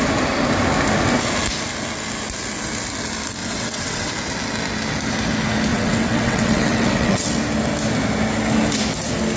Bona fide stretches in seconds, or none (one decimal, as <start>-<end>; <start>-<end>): 0.0-3.4; 4.1-5.7; 7.4-9.4